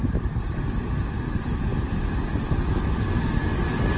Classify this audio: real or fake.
real